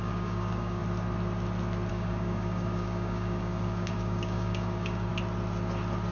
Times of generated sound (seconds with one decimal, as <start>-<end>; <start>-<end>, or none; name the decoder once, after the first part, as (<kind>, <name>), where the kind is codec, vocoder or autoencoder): 0.0-0.8 (codec, DAC); 1.9-5.1